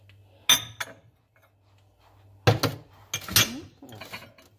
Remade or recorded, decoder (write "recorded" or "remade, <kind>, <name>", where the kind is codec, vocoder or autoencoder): recorded